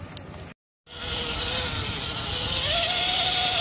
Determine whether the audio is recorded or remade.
recorded